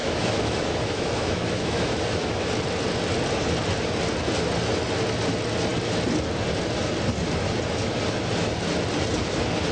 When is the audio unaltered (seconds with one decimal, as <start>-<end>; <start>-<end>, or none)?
2.5-9.7